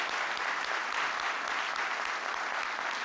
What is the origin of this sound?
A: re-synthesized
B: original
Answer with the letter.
B